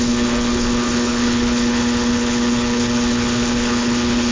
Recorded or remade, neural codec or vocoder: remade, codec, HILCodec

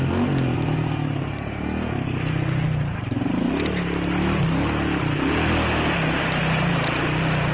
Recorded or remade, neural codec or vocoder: recorded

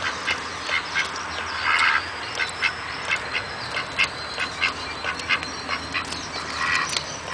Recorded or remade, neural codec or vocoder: recorded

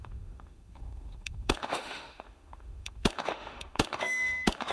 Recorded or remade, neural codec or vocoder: remade, autoencoder, DAC-VAE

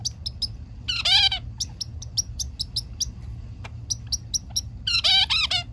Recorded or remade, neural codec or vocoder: recorded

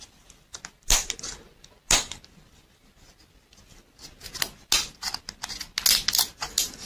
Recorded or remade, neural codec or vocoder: recorded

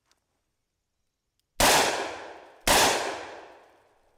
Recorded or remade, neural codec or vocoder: recorded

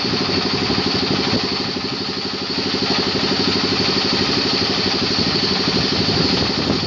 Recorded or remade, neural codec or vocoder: recorded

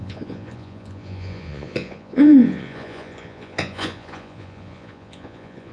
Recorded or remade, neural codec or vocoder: remade, vocoder, Vocos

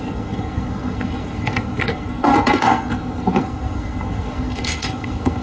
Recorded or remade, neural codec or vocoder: remade, codec, SNAC